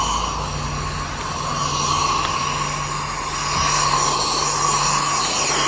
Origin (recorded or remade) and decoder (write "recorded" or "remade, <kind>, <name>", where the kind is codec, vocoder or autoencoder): recorded